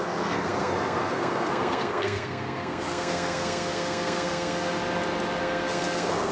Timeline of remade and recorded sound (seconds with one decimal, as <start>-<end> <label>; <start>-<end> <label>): 0.0-4.8 remade; 4.8-5.4 recorded; 5.4-6.3 remade